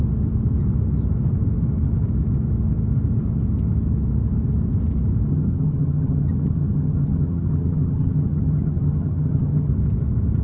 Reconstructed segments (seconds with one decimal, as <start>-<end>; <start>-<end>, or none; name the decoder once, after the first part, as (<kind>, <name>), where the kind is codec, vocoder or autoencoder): 5.3-9.7 (vocoder, HiFi-GAN)